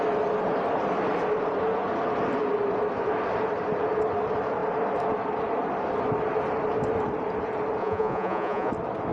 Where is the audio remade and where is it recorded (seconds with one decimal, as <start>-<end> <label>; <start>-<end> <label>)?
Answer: 0.0-7.8 recorded; 7.8-8.7 remade; 8.7-9.1 recorded